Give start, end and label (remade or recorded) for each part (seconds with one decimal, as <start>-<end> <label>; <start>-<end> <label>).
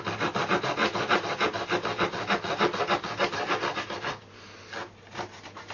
0.0-5.7 recorded